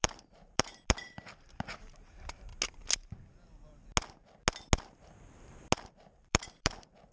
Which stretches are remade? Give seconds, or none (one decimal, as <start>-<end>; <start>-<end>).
0.0-2.5; 5.9-7.1

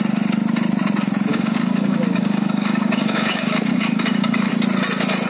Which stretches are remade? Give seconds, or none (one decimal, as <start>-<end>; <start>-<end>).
1.3-4.5

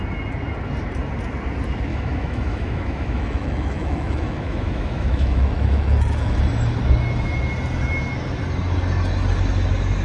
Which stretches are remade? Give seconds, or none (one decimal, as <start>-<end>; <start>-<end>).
1.9-6.4

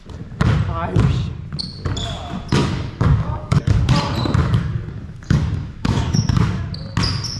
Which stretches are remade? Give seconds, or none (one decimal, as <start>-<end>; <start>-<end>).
2.6-3.9; 4.4-6.6

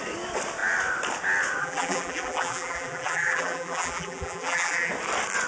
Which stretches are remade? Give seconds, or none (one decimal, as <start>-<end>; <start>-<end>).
1.6-4.9